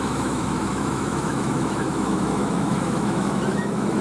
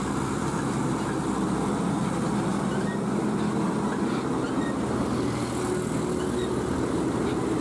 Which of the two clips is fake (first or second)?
first